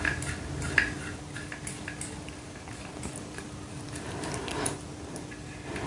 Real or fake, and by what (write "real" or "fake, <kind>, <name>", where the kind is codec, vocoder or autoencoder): real